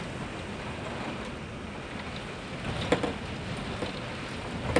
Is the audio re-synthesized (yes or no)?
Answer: no